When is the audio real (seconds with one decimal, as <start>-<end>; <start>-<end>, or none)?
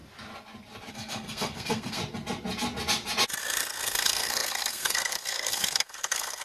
0.0-0.9; 2.0-3.4